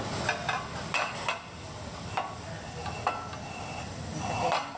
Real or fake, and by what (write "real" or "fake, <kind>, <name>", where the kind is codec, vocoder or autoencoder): real